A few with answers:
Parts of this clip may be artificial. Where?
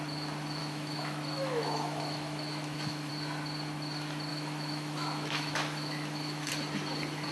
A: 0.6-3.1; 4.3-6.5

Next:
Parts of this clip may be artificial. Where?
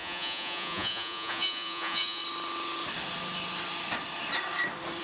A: 0.0-2.2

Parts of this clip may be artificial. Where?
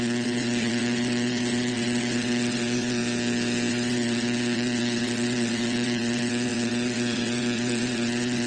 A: 0.0-3.0; 3.7-8.5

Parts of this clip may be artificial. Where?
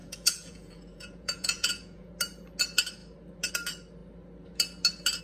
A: 0.0-2.1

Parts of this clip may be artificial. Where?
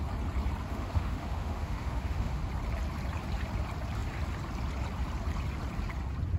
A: 0.7-2.4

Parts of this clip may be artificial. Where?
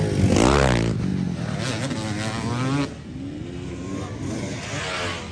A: none